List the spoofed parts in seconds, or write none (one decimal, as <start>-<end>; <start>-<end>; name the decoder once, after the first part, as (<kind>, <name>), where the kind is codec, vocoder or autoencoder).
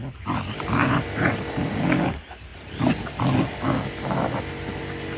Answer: 0.8-1.4 (vocoder, BigVGAN v2); 2.5-3.4